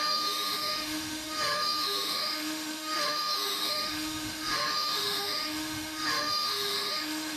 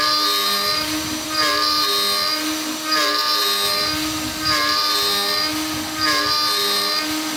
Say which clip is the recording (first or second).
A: second